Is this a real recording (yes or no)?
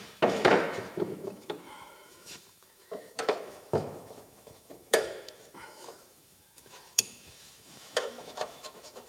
no